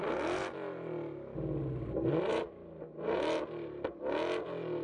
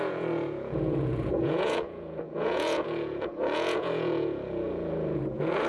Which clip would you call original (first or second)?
first